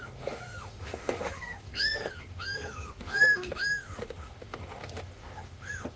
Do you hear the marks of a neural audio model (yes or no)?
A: yes